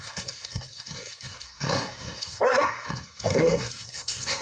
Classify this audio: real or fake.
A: fake